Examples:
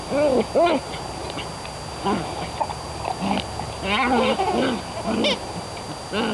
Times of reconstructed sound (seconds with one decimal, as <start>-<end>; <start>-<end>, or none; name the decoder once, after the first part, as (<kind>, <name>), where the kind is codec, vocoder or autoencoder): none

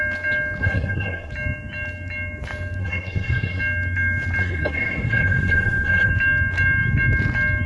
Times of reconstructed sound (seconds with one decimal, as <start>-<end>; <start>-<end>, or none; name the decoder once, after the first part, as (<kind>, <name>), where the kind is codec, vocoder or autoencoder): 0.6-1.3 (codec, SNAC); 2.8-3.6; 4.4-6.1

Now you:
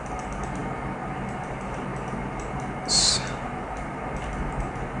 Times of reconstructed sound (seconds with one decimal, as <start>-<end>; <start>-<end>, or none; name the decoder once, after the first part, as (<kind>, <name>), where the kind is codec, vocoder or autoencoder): none

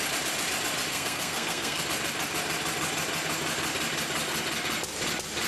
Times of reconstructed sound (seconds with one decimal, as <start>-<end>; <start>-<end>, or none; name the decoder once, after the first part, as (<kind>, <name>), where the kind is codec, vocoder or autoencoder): 0.9-1.8 (codec, SNAC)

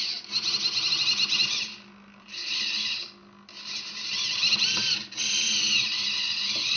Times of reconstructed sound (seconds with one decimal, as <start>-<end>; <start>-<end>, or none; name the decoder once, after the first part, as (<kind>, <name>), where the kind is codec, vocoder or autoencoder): none